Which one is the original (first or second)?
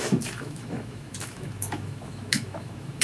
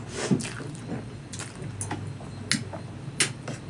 second